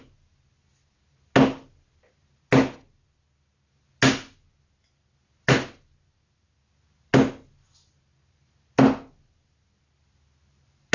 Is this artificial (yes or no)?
no